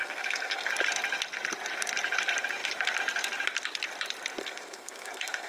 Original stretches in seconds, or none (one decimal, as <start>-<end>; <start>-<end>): 0.7-4.4